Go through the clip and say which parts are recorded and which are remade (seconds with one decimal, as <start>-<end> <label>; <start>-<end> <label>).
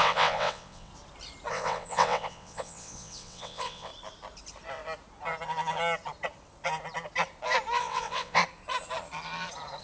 0.0-0.9 remade; 0.9-1.5 recorded; 1.5-3.9 remade; 3.9-7.8 recorded; 7.8-8.4 remade; 8.4-9.8 recorded